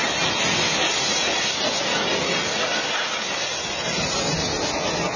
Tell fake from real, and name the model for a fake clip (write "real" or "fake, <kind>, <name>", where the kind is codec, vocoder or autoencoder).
real